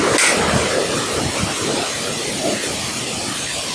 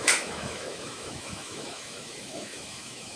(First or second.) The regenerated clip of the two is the second